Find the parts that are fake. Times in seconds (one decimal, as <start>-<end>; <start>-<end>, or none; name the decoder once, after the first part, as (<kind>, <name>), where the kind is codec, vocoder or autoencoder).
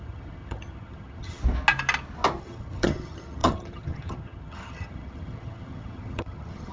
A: 0.0-1.4 (vocoder, HiFi-GAN); 2.4-6.7